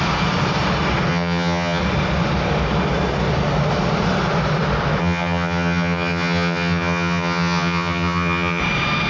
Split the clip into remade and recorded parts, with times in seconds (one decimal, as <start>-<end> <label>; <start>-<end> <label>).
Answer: 0.0-1.1 recorded; 1.1-1.8 remade; 1.8-5.0 recorded; 5.0-8.6 remade; 8.6-9.1 recorded